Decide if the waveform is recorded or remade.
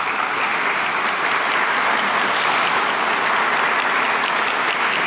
recorded